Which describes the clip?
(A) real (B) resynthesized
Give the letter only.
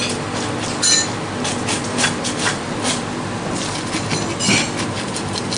A